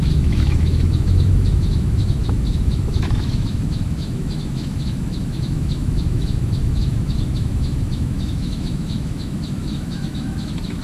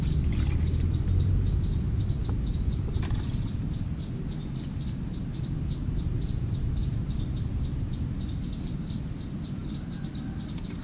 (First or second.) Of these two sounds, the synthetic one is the first